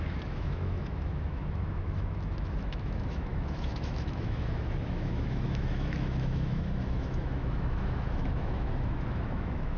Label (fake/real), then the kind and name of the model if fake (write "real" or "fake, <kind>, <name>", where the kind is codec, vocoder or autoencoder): fake, autoencoder, DAC-VAE